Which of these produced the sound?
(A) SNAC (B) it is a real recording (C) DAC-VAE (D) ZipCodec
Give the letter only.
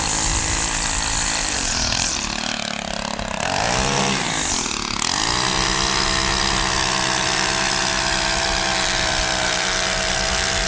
B